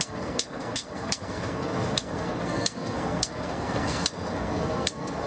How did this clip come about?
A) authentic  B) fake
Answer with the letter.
B